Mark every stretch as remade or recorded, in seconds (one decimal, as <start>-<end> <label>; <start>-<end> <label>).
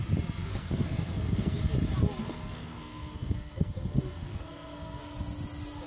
0.0-0.5 recorded; 0.5-1.6 remade; 1.6-2.2 recorded; 2.2-5.0 remade; 5.0-5.9 recorded